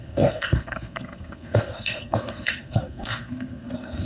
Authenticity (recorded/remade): remade